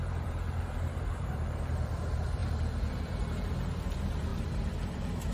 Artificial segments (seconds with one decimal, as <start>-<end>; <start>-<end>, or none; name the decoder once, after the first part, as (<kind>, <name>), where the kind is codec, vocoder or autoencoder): 0.0-5.3 (vocoder, BigVGAN v2)